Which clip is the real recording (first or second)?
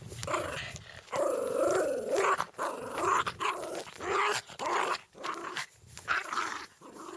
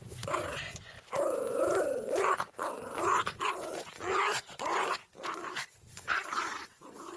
first